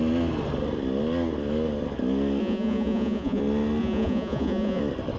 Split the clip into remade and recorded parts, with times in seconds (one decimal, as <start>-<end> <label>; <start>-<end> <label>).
0.0-2.4 recorded; 2.4-3.4 remade; 3.4-3.8 recorded; 3.8-4.8 remade; 4.8-5.2 recorded